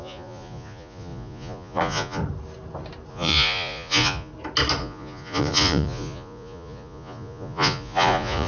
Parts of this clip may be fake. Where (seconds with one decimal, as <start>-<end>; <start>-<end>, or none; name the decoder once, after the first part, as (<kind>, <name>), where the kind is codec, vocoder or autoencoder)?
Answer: 0.0-2.2 (vocoder, Vocos); 3.1-4.3; 4.8-8.5